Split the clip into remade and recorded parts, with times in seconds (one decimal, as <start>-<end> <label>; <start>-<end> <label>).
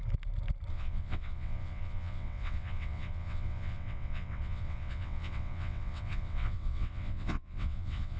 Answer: 0.0-0.7 recorded; 0.7-8.2 remade